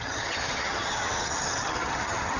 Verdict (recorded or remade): remade